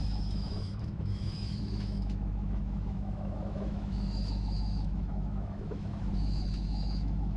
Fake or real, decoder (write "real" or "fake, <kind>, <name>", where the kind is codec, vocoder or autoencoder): fake, autoencoder, DAC-VAE